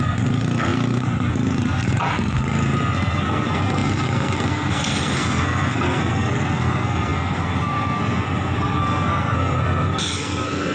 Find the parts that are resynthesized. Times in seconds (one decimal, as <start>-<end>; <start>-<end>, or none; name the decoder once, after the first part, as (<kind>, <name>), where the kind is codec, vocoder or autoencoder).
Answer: 0.0-10.7 (codec, SNAC)